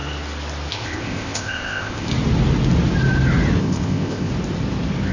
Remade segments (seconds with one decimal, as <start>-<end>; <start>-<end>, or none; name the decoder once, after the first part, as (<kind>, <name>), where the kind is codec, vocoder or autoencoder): 0.7-2.1 (codec, ZipCodec); 3.6-4.3